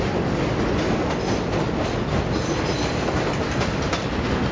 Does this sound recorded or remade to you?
recorded